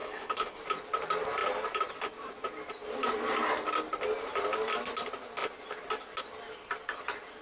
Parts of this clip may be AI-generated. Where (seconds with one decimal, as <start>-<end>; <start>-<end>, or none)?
0.0-0.6